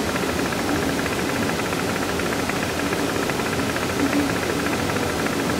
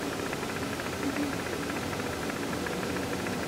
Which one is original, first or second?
first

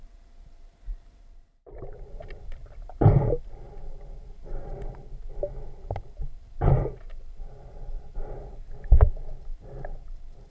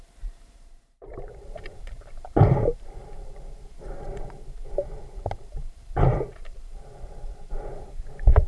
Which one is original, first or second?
first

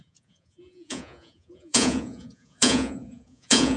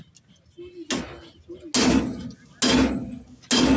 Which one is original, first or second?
second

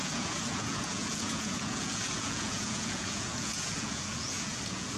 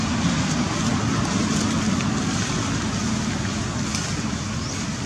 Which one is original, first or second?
second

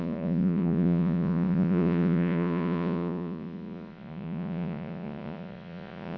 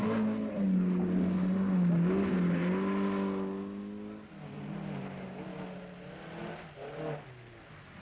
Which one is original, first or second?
second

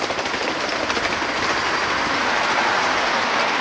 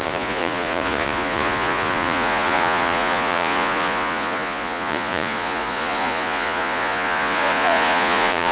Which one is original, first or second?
first